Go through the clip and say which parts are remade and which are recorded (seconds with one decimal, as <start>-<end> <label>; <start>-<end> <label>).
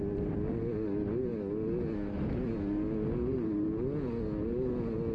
0.0-5.1 recorded